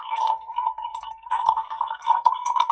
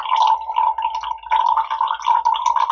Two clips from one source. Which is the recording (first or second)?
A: second